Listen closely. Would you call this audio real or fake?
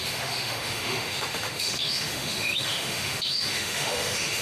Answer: fake